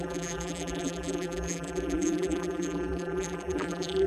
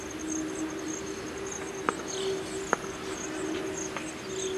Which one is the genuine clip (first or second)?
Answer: second